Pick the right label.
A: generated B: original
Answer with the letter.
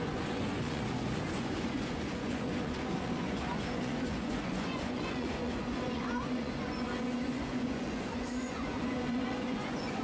A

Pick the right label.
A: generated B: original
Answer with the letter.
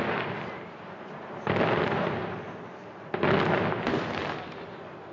B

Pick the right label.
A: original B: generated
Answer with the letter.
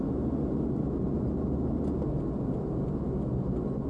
A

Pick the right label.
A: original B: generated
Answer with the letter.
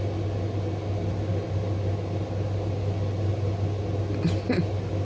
A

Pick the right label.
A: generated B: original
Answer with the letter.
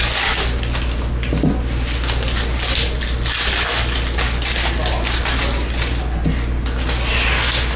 B